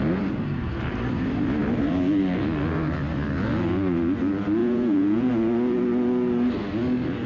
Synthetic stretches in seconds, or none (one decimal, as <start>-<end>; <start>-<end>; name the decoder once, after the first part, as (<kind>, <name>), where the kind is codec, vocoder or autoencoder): 4.6-5.3 (vocoder, Vocos)